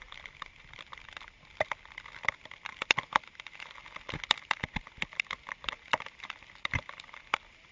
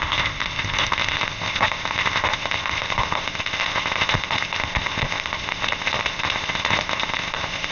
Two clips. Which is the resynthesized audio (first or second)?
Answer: second